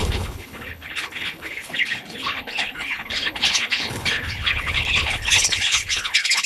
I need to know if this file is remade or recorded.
remade